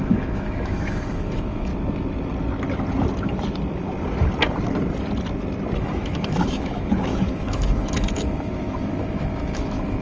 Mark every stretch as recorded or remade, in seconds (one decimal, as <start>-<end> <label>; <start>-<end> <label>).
0.0-1.7 remade; 1.7-5.8 recorded; 5.8-10.0 remade